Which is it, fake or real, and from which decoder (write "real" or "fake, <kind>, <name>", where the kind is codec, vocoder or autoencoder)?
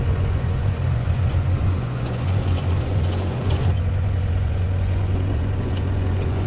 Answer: fake, vocoder, Vocos